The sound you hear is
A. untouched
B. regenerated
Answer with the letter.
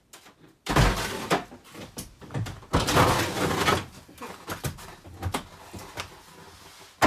A